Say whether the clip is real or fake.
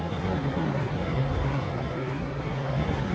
fake